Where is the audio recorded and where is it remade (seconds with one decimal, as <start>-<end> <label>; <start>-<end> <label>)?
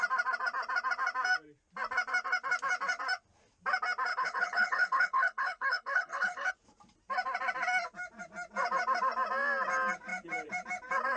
0.0-4.1 recorded; 4.1-6.5 remade; 6.5-11.2 recorded